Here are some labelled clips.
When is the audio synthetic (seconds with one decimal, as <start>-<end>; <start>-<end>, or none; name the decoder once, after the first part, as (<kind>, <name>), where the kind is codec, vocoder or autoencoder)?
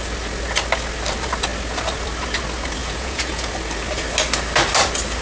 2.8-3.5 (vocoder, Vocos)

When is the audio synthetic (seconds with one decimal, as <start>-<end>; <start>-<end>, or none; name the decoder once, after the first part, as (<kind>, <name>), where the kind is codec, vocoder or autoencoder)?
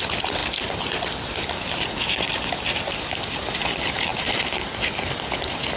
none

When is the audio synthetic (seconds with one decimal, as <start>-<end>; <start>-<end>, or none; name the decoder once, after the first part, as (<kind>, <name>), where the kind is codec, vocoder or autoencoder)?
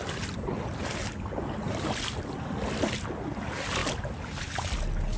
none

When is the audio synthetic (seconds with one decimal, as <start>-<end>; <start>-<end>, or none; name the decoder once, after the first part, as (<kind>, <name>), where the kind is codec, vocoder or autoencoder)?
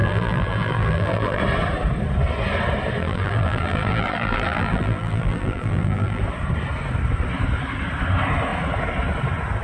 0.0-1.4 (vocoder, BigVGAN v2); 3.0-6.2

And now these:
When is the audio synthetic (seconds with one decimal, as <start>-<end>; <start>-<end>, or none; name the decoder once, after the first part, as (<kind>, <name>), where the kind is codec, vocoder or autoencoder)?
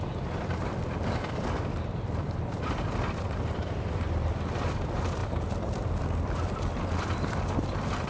0.0-8.1 (vocoder, BigVGAN v2)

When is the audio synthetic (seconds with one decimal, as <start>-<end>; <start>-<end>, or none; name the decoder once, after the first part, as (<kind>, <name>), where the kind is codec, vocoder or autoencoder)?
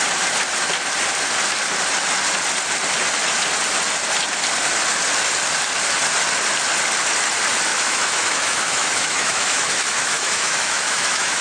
7.7-11.4 (autoencoder, DAC-VAE)